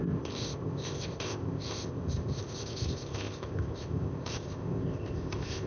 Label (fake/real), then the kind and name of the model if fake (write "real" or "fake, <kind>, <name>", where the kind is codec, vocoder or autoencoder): fake, codec, ZipCodec